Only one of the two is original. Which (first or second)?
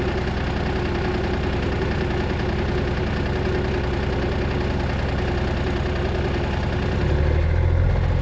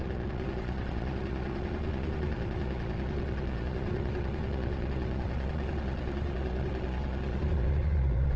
first